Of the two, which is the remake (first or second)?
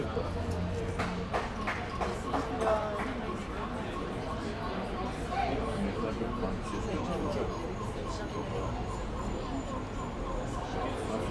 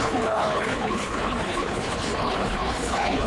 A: second